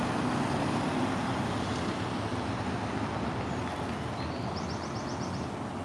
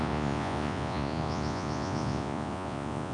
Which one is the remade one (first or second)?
second